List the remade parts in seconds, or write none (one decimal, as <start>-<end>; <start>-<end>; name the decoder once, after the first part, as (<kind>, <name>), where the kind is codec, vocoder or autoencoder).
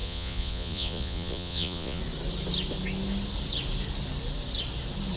0.0-2.0 (vocoder, Vocos)